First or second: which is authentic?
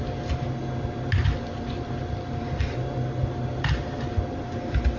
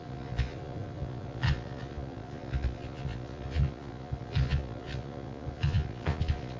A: first